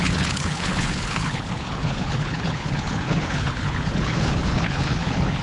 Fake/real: fake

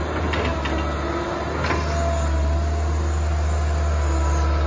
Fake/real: real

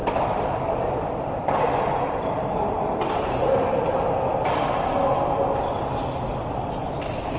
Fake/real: real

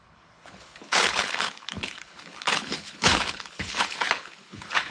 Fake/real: fake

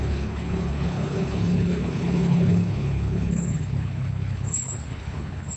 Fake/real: fake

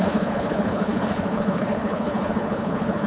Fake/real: fake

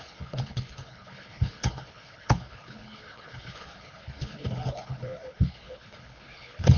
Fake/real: fake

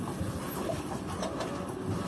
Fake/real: real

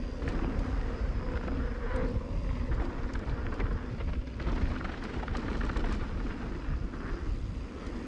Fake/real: real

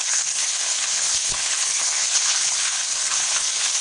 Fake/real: fake